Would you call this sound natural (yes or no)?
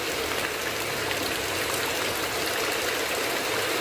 yes